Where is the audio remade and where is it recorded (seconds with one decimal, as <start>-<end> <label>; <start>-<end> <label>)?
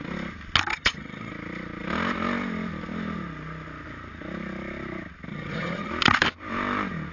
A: 0.0-0.7 recorded; 0.7-1.3 remade; 1.3-5.3 recorded; 5.3-5.9 remade; 5.9-7.1 recorded